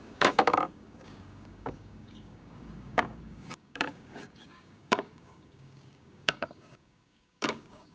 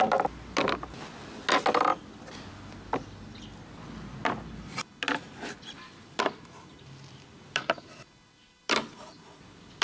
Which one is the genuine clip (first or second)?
second